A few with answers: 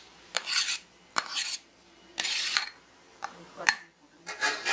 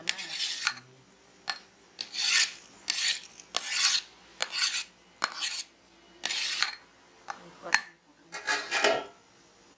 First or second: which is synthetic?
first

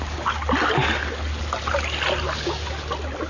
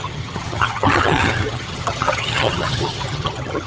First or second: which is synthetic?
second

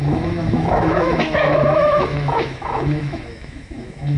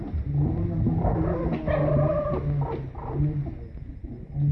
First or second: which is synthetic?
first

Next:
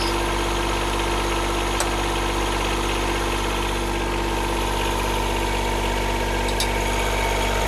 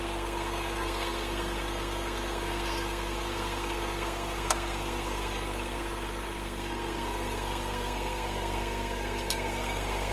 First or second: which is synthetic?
second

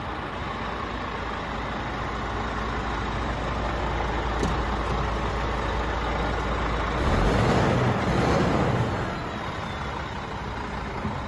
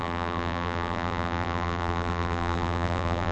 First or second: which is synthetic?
second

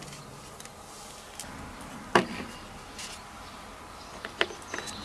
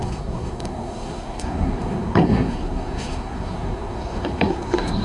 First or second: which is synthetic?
second